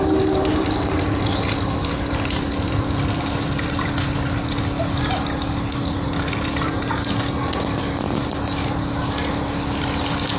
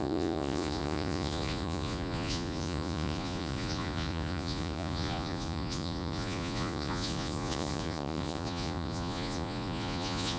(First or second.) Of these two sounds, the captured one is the first